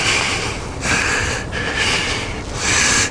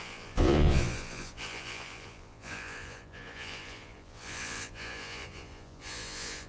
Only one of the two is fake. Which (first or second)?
second